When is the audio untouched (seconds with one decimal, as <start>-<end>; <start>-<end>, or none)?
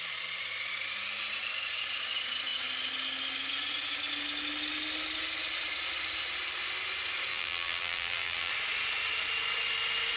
0.0-7.3; 8.5-10.2